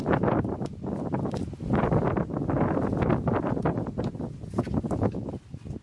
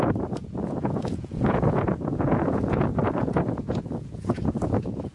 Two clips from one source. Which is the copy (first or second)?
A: second